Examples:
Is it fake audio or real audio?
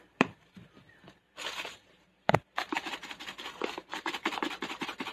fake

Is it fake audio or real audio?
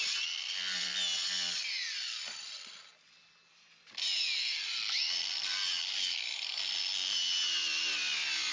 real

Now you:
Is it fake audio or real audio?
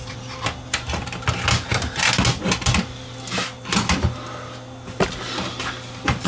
real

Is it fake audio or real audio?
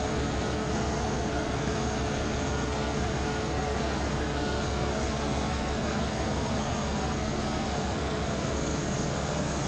fake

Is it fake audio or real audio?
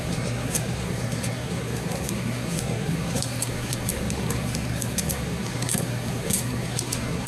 fake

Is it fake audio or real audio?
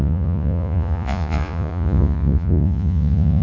fake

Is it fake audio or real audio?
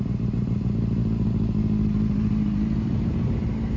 real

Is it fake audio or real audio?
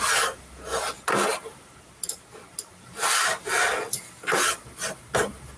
real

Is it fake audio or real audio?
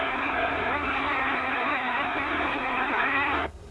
fake